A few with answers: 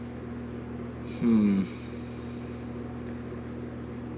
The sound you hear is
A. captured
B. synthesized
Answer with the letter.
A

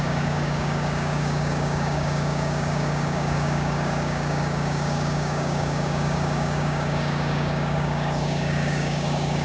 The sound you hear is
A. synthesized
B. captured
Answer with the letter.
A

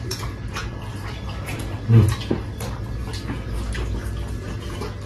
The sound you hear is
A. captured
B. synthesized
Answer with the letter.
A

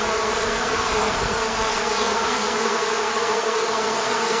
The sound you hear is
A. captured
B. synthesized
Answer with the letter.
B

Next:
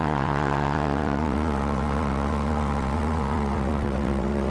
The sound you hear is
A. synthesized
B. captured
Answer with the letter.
A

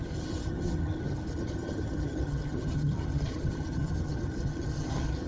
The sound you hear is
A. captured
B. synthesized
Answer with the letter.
B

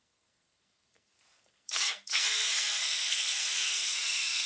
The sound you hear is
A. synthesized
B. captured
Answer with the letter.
A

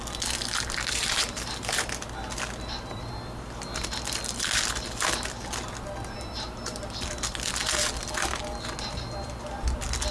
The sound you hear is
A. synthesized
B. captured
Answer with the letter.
B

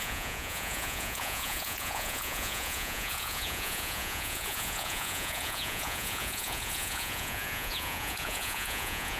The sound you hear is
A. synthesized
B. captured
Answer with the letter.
A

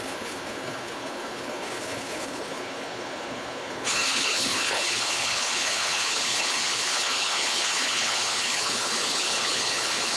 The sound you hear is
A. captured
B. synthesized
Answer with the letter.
B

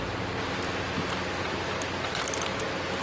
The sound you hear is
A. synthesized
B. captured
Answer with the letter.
B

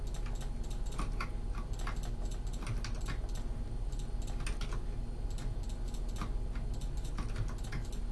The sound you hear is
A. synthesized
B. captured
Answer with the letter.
B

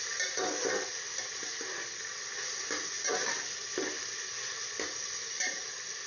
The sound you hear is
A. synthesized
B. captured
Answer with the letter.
B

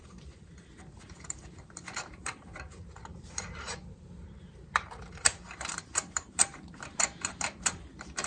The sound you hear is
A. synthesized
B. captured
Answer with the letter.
A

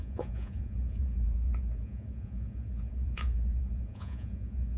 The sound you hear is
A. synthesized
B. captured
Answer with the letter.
A